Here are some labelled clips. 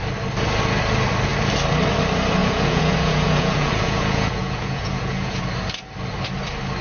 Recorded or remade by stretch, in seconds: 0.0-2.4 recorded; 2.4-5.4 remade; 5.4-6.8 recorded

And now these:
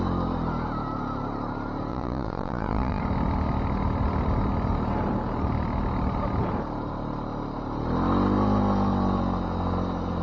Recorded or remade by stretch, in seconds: 0.0-1.9 recorded; 1.9-3.0 remade; 3.0-10.2 recorded

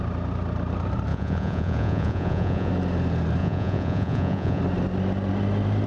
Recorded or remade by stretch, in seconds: 0.0-1.1 recorded; 1.1-2.7 remade; 2.7-3.4 recorded; 3.4-4.6 remade; 4.6-5.9 recorded

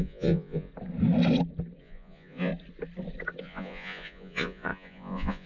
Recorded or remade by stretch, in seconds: 0.0-0.7 remade; 0.7-1.8 recorded; 1.8-2.5 remade; 2.5-3.4 recorded; 3.4-5.5 remade

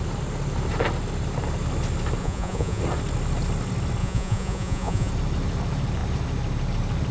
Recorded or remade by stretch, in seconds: 0.0-2.2 recorded; 2.2-2.8 remade; 2.8-4.0 recorded; 4.0-5.1 remade; 5.1-7.1 recorded

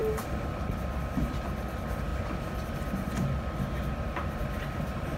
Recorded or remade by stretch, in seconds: 0.0-5.2 recorded

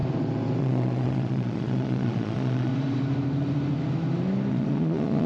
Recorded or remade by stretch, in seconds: 0.0-0.6 recorded; 0.6-2.7 remade; 2.7-4.5 recorded; 4.5-5.3 remade